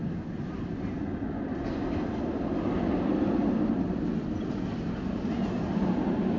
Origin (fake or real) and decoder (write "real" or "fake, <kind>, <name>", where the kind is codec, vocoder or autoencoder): real